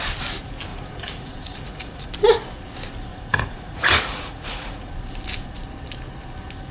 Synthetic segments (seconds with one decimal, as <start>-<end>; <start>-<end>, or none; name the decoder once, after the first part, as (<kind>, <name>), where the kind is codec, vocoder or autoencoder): 0.7-2.1 (vocoder, Vocos); 3.1-4.9